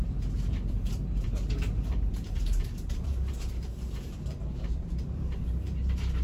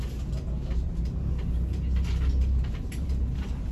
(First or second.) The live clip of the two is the second